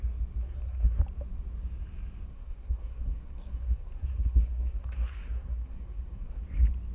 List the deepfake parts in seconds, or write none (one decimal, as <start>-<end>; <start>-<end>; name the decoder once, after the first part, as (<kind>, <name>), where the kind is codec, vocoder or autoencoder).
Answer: 0.4-1.0 (codec, SNAC); 2.3-6.4